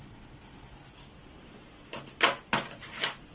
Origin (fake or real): real